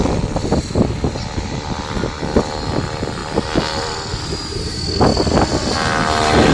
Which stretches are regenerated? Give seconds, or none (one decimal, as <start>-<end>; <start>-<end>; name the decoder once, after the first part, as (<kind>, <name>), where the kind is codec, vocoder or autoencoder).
3.2-4.1 (vocoder, BigVGAN v2); 5.1-5.7